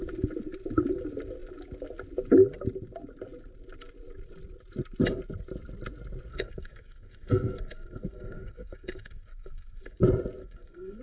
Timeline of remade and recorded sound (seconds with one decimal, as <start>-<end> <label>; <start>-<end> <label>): 0.0-6.3 recorded; 6.3-10.0 remade; 10.0-10.4 recorded; 10.4-11.0 remade